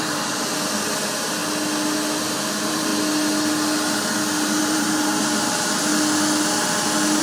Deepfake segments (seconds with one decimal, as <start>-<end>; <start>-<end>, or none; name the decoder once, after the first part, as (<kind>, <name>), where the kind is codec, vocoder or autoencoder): 0.0-1.4 (vocoder, BigVGAN v2); 2.2-2.9; 4.6-5.9